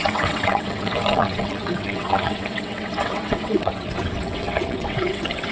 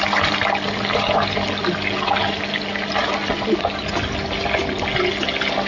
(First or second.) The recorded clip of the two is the second